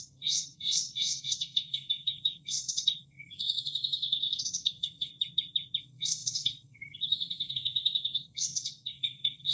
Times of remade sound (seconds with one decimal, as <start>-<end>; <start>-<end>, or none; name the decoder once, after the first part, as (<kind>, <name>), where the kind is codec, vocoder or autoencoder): 0.0-5.1 (codec, SNAC); 5.8-9.5